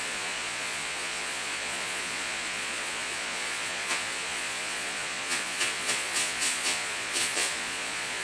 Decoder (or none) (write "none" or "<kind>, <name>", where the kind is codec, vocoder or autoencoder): vocoder, Vocos